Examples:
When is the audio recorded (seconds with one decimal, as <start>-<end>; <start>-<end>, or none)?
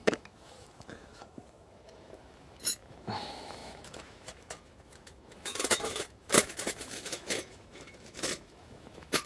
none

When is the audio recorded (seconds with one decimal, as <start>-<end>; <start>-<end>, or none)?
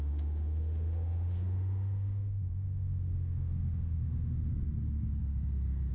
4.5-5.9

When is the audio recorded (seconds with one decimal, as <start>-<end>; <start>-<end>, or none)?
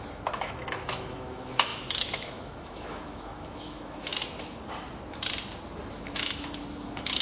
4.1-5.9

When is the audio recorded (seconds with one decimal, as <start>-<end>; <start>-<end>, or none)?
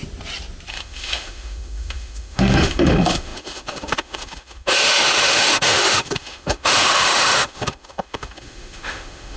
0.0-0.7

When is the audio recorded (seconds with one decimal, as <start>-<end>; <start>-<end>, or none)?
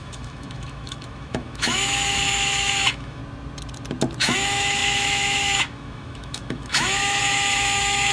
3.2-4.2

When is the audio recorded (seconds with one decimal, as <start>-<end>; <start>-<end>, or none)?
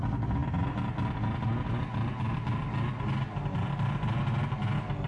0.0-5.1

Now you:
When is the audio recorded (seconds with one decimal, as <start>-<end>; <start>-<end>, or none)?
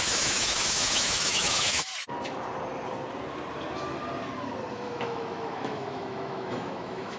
1.9-4.7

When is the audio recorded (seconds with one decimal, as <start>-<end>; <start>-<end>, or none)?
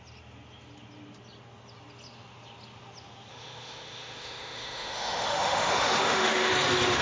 0.0-3.3; 6.5-7.0